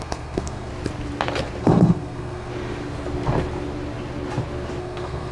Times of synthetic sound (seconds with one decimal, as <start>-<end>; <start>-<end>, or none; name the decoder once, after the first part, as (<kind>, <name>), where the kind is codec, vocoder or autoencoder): 0.0-0.7 (codec, SNAC); 1.6-2.5; 4.8-5.3